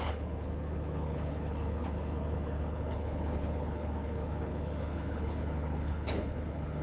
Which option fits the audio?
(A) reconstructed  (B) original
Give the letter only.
A